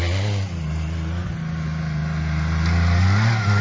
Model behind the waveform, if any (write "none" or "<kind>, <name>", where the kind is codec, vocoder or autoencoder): none